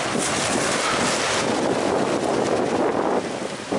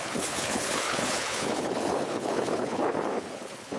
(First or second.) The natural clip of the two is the first